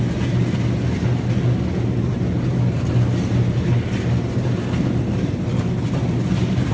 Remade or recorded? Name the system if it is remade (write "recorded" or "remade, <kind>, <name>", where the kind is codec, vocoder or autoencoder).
recorded